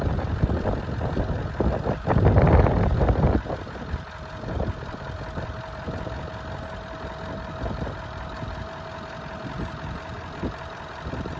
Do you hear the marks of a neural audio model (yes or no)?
yes